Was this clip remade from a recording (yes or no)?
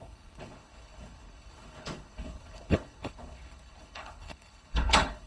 yes